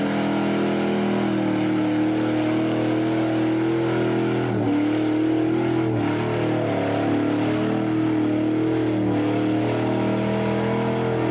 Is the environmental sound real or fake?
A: real